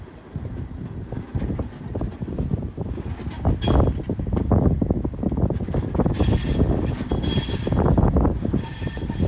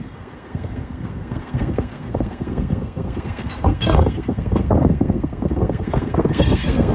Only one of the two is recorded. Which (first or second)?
first